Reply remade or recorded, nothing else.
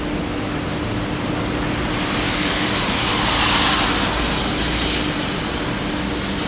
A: recorded